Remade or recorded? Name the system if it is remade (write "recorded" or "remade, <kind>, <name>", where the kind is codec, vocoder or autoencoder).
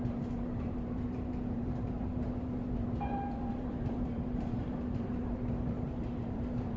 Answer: remade, vocoder, BigVGAN v2